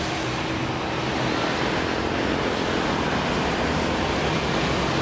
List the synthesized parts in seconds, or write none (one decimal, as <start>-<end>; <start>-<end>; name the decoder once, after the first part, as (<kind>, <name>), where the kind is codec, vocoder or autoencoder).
0.0-5.0 (vocoder, BigVGAN v2)